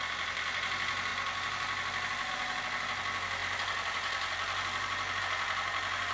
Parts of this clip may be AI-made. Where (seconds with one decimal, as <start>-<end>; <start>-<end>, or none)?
1.1-2.3; 3.4-5.2